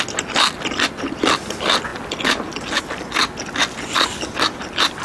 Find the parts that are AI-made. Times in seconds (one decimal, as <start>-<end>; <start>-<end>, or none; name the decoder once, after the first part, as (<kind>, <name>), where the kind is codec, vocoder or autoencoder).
none